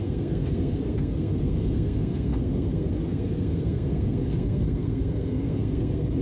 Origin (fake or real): fake